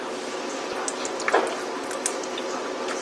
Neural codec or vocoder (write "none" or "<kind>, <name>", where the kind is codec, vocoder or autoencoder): none